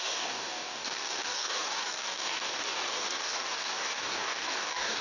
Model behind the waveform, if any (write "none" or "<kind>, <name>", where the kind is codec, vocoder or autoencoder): codec, DAC